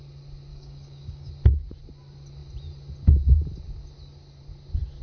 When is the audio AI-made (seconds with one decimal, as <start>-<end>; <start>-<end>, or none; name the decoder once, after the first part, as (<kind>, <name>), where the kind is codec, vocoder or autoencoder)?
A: 0.5-1.3 (codec, DAC)